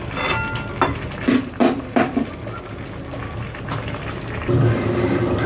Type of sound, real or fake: real